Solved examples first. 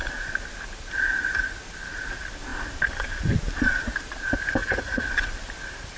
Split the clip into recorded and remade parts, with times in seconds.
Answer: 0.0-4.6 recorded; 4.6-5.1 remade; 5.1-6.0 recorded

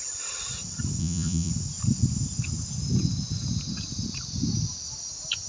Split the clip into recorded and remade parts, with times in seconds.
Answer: 0.0-1.0 recorded; 1.0-1.5 remade; 1.5-5.5 recorded

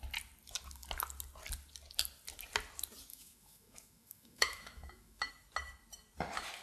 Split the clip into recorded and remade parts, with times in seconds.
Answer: 0.0-3.1 recorded; 3.1-5.3 remade; 5.3-6.6 recorded

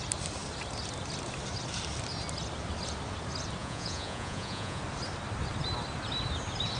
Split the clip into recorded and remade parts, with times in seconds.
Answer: 0.0-3.6 recorded; 3.6-4.8 remade; 4.8-6.8 recorded

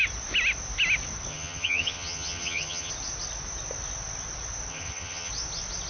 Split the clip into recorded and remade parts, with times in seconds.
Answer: 0.0-1.3 recorded; 1.3-2.9 remade; 2.9-4.7 recorded; 4.7-5.3 remade; 5.3-5.9 recorded

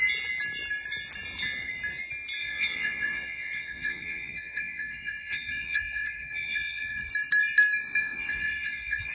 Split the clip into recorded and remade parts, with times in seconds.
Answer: 0.0-2.4 recorded; 2.4-7.1 remade; 7.1-8.0 recorded; 8.0-9.1 remade